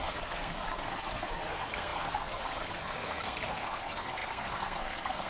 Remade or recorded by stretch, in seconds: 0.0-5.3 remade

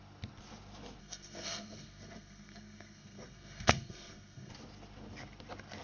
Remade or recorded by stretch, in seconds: 0.0-1.0 recorded; 1.0-4.5 remade; 4.5-5.8 recorded

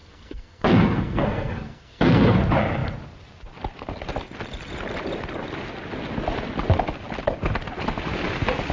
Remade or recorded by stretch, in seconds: 0.0-2.4 remade; 2.4-8.7 recorded

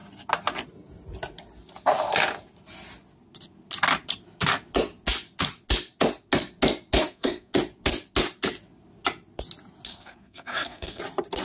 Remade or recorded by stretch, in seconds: 0.0-7.0 recorded; 7.0-7.5 remade; 7.5-9.9 recorded; 9.9-11.0 remade; 11.0-11.4 recorded

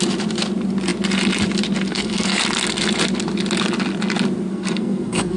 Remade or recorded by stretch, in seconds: 0.0-1.9 recorded; 1.9-2.4 remade; 2.4-4.5 recorded; 4.5-5.4 remade

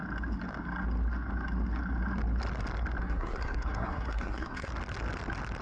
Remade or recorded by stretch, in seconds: 0.0-3.0 recorded; 3.0-4.7 remade; 4.7-5.6 recorded

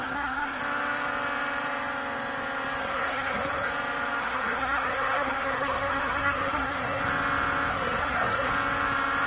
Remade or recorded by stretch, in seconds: 0.0-0.6 remade; 0.6-2.8 recorded; 2.8-3.7 remade; 3.7-4.2 recorded; 4.2-7.0 remade; 7.0-7.7 recorded; 7.7-8.5 remade; 8.5-9.3 recorded

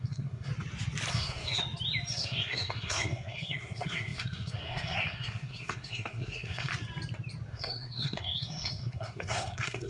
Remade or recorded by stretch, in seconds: 0.0-0.5 remade; 0.5-1.1 recorded; 1.1-1.6 remade; 1.6-2.1 recorded; 2.1-6.7 remade; 6.7-7.5 recorded; 7.5-9.9 remade